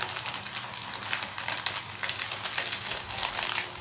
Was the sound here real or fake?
real